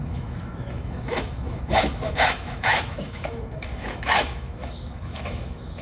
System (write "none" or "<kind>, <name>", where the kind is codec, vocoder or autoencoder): autoencoder, DAC-VAE